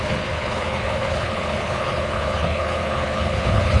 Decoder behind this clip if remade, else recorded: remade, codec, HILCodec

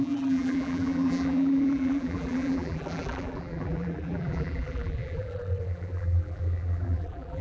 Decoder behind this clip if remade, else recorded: remade, vocoder, BigVGAN v2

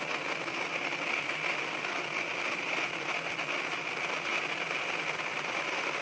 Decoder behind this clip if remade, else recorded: recorded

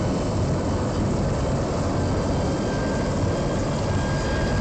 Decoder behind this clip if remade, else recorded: recorded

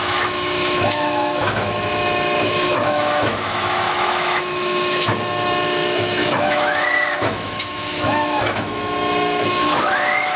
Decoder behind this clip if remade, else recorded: remade, autoencoder, DAC-VAE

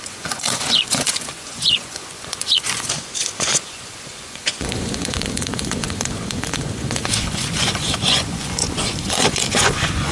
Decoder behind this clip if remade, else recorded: remade, vocoder, Vocos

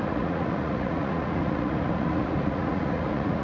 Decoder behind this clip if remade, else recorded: remade, vocoder, Vocos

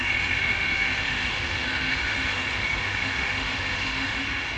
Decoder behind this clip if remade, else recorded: remade, autoencoder, DAC-VAE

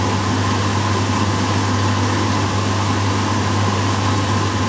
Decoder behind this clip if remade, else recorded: recorded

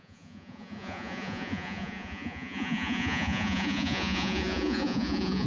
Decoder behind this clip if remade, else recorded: remade, vocoder, Vocos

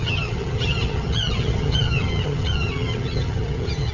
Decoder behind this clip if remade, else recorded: remade, vocoder, HiFi-GAN